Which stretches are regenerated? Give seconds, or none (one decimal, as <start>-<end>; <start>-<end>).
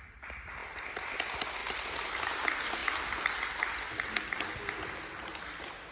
1.6-2.3